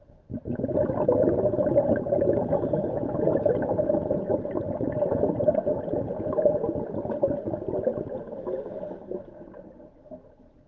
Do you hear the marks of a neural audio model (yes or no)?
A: no